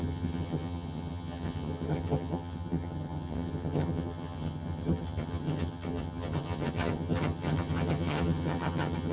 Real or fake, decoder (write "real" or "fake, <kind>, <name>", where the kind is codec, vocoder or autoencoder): fake, vocoder, HiFi-GAN